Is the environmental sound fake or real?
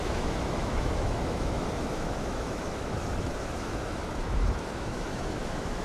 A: fake